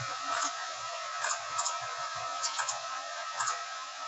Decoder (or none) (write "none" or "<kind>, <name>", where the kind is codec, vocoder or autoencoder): vocoder, Vocos